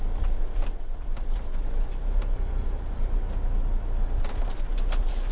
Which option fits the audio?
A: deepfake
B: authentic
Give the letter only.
B